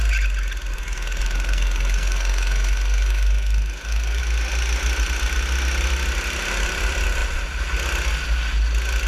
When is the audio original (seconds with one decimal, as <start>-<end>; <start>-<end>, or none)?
0.0-0.7; 4.2-9.1